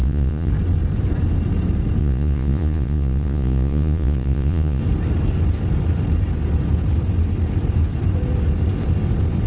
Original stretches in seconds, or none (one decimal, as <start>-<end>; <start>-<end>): 0.5-2.0; 4.8-9.5